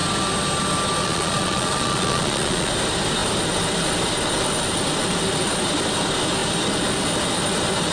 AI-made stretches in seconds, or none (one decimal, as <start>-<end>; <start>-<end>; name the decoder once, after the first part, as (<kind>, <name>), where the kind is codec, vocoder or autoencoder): 1.0-2.7 (vocoder, Vocos)

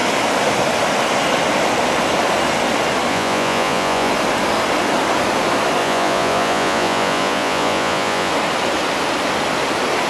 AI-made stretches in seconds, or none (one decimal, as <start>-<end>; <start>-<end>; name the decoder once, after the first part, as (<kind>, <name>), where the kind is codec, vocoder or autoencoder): 3.1-4.1 (vocoder, Vocos); 5.8-8.3

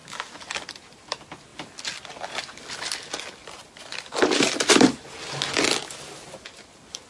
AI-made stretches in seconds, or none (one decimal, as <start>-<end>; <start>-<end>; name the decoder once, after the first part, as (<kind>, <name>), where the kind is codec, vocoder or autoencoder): none

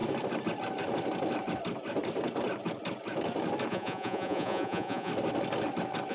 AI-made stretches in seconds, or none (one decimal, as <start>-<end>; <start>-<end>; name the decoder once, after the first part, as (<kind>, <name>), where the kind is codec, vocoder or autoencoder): 3.7-5.1 (vocoder, Vocos)

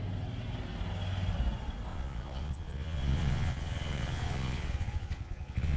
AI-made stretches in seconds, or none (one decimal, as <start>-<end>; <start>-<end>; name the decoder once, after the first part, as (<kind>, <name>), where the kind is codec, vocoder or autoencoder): 1.9-5.8 (vocoder, Vocos)

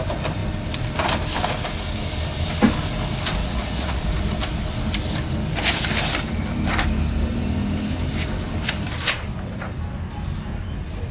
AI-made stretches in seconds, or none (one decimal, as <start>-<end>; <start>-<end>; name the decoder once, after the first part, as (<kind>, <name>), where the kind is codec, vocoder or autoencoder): 3.4-4.0 (vocoder, Vocos)

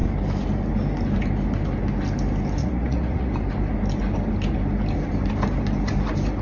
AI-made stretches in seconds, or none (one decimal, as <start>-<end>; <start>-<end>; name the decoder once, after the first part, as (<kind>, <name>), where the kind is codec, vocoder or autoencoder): 2.6-3.3 (vocoder, Vocos)